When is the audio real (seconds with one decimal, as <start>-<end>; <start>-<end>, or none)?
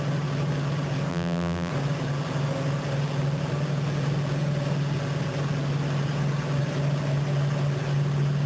0.0-1.1; 1.7-8.5